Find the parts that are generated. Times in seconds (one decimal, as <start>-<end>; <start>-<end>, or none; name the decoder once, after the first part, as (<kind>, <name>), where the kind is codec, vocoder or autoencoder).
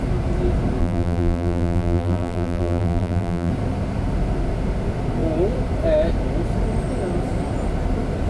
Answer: 0.8-3.5 (vocoder, BigVGAN v2)